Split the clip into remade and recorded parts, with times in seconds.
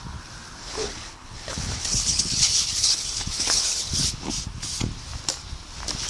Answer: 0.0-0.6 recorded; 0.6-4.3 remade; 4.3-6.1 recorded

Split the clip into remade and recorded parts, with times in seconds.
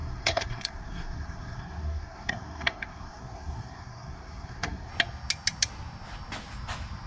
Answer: 0.0-4.9 remade; 4.9-7.1 recorded